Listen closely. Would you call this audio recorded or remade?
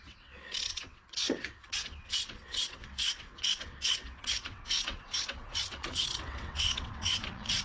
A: remade